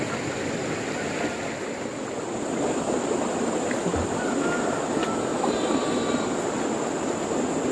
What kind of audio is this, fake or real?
real